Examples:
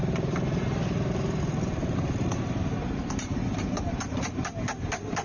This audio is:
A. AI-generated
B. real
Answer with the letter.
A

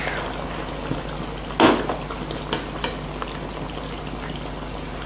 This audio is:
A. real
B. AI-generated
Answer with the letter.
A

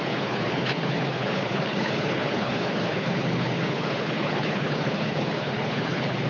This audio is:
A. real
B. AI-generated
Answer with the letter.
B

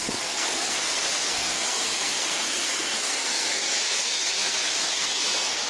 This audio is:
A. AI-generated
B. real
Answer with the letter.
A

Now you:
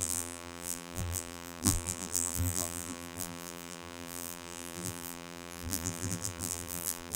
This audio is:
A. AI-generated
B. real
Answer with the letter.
A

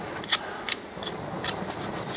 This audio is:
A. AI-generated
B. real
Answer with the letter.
B